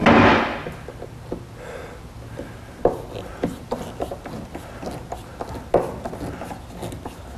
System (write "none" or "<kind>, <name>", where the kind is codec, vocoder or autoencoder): none